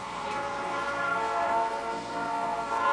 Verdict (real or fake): fake